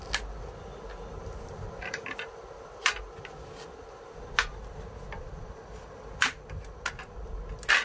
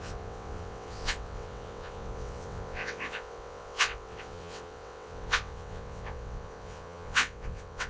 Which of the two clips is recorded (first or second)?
first